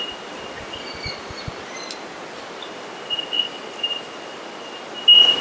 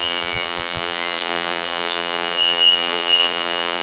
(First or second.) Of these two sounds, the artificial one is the second